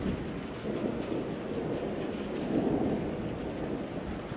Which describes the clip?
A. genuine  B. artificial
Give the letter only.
A